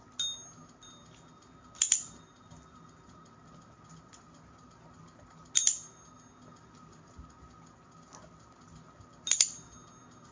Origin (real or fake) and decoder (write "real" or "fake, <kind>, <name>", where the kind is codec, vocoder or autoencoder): real